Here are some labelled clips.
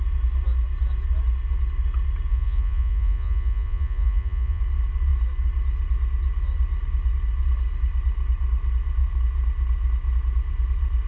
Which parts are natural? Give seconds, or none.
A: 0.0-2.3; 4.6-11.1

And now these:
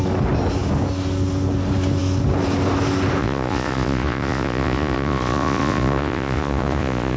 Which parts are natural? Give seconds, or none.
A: 0.0-3.2

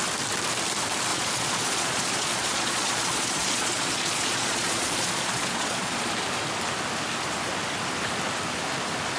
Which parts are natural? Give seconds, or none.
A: 0.0-1.1; 6.1-9.2

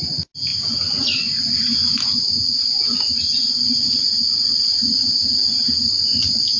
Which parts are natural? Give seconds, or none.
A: 0.0-6.6

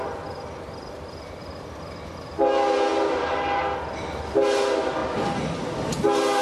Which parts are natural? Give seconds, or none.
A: 0.0-6.4